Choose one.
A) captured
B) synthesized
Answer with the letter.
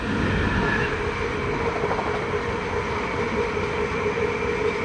A